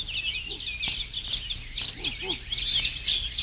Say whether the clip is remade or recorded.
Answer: recorded